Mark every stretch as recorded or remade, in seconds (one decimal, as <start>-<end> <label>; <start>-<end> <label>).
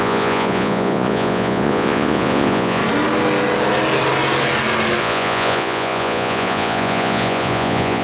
0.0-2.8 remade; 2.8-5.0 recorded; 5.0-8.0 remade